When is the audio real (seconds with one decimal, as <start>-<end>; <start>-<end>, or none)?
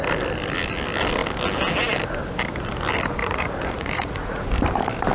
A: 0.0-3.2; 4.5-5.1